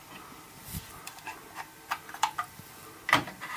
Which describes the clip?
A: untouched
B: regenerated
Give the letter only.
B